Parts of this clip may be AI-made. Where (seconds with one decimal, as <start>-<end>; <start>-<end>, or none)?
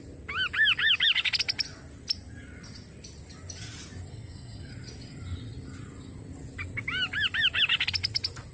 4.1-4.7